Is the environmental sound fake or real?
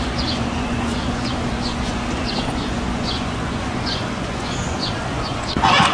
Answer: fake